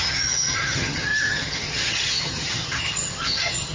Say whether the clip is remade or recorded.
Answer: remade